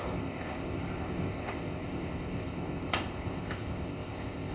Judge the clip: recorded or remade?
remade